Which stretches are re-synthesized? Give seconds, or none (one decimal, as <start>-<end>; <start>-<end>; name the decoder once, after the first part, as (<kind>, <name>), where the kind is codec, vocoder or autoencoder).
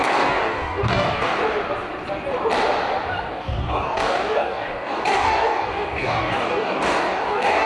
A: 0.0-1.4 (codec, DAC); 3.3-7.7